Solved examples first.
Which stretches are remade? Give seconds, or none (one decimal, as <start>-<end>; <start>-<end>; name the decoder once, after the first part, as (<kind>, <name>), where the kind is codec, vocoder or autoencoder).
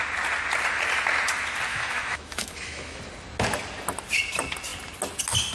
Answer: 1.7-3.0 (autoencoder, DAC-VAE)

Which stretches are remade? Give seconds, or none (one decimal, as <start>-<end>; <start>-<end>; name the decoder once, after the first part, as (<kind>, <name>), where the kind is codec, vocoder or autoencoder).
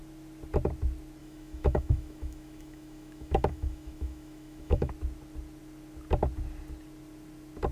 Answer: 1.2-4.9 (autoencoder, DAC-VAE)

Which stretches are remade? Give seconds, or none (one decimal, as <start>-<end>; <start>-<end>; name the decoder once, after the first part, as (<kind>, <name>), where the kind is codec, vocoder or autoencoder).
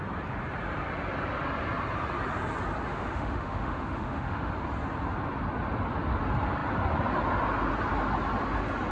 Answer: 2.9-4.5 (autoencoder, DAC-VAE)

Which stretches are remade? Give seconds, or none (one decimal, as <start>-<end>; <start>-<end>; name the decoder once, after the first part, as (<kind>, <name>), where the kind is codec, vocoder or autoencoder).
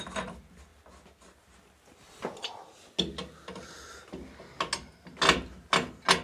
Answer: none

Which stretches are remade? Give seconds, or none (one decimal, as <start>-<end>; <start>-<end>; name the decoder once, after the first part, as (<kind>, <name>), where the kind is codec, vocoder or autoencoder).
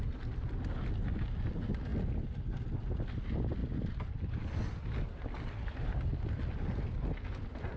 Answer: none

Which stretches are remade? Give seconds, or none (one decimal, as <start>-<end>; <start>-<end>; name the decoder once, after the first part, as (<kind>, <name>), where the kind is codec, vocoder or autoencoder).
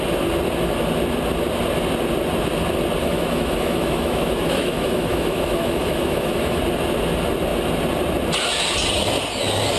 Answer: 3.0-6.6 (autoencoder, DAC-VAE)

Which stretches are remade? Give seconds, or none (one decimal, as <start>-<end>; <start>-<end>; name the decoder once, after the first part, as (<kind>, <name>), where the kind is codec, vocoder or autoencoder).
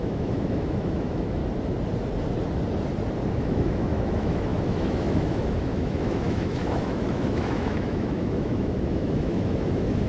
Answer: 0.0-1.4 (autoencoder, DAC-VAE); 3.3-10.1